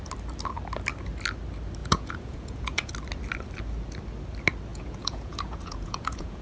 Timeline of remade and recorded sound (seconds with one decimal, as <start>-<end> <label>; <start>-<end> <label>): 0.0-1.8 recorded; 1.8-2.9 remade; 2.9-4.7 recorded; 4.7-6.4 remade

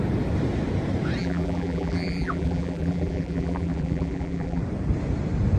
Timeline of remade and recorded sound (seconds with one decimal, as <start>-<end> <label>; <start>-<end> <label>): 0.0-1.2 recorded; 1.2-4.6 remade; 4.6-5.6 recorded

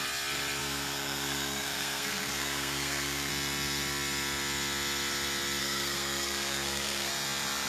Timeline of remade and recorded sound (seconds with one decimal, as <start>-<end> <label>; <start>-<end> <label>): 0.0-0.6 recorded; 0.6-3.3 remade; 3.3-5.6 recorded; 5.6-7.1 remade; 7.1-7.7 recorded

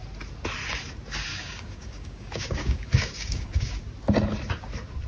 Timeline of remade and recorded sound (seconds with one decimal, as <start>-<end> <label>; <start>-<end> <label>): 0.0-1.3 recorded; 1.3-3.8 remade; 3.8-5.1 recorded

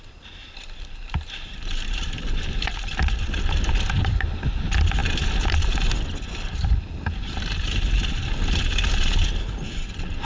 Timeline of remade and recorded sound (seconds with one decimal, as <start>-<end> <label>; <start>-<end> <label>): 0.0-0.4 recorded; 0.4-3.2 remade; 3.2-10.2 recorded

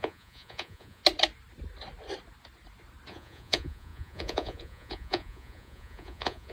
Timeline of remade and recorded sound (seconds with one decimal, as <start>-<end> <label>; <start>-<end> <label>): 0.0-1.0 remade; 1.0-3.1 recorded; 3.1-6.5 remade